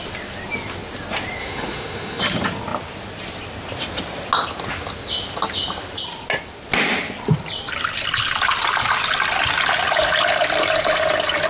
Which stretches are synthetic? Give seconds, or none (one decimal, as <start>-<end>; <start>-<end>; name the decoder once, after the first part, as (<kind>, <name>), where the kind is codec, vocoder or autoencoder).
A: 1.4-2.2 (autoencoder, DAC-VAE)